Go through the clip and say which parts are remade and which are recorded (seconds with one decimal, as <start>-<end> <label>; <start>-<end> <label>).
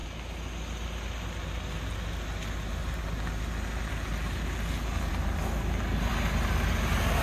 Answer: 0.0-7.2 recorded